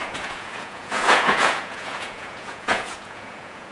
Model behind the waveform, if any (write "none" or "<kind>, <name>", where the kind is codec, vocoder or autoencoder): vocoder, Vocos